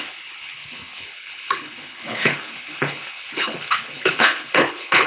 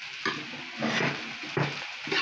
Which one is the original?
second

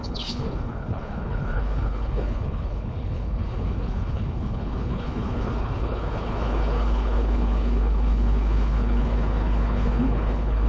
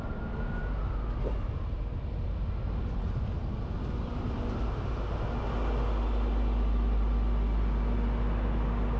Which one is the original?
second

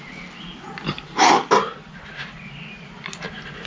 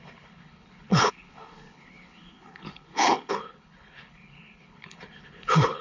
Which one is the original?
first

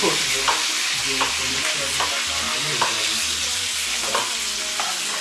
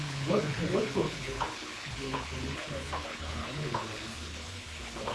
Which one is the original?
first